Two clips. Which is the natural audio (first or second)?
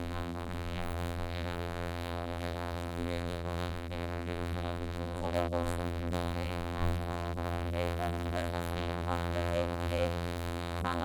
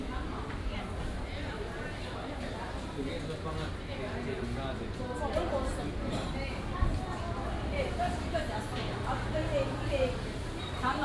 second